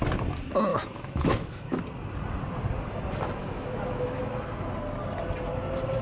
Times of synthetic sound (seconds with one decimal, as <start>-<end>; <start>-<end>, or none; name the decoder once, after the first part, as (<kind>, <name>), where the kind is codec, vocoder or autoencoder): 0.7-1.8 (autoencoder, DAC-VAE); 3.4-4.2